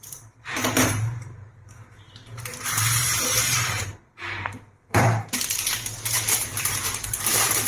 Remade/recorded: remade